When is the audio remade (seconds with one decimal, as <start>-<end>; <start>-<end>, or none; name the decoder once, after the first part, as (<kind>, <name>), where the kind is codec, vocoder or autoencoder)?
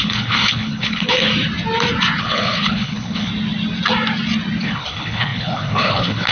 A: 0.0-1.3 (codec, HILCodec); 2.2-3.3; 4.6-6.3